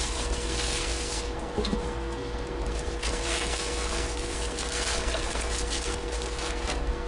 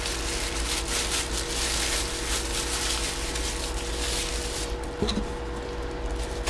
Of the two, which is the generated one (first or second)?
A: first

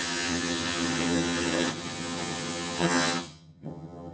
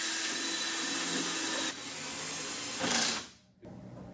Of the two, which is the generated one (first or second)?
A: first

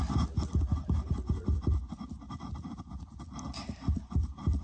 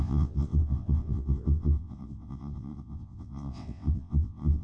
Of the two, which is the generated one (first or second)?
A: second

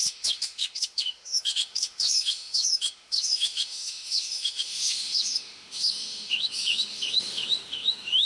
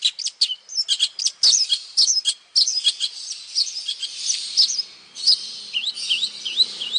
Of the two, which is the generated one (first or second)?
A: first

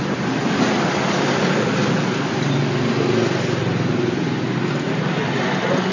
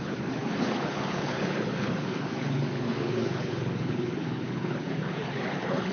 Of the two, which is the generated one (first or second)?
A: second